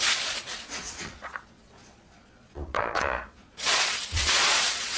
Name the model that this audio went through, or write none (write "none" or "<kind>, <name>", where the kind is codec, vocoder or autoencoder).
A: vocoder, Vocos